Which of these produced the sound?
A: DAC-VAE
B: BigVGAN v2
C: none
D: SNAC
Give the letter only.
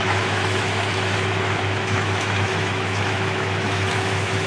A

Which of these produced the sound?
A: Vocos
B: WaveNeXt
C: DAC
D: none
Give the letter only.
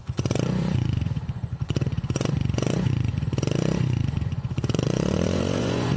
A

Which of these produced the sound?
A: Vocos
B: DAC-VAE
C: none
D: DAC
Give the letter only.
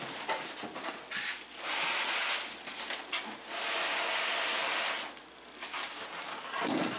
C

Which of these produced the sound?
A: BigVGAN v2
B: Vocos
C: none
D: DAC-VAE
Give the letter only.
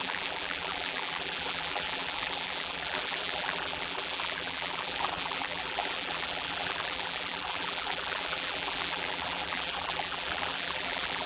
A